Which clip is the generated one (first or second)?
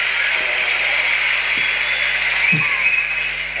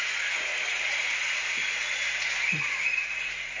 second